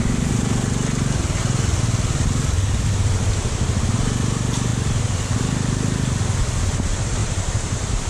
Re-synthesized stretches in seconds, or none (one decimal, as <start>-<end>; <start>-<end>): 7.2-8.1